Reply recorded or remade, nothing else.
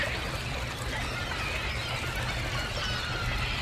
remade